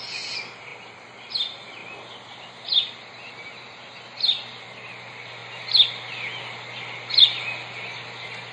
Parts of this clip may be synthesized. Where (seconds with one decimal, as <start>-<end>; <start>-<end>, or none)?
none